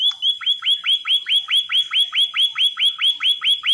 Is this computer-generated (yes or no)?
no